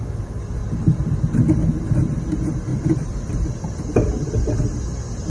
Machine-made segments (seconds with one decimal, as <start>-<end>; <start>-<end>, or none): 2.7-3.2